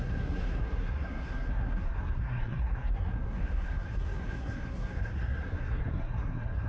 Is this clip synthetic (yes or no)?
yes